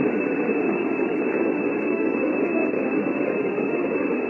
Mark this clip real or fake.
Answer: fake